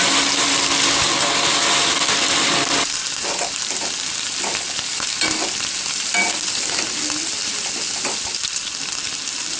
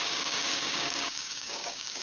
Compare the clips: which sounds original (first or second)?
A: first